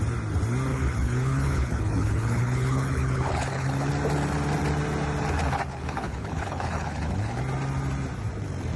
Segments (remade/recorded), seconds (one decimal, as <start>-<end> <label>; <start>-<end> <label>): 0.0-0.7 recorded; 0.7-3.9 remade; 3.9-5.7 recorded; 5.7-7.4 remade; 7.4-8.8 recorded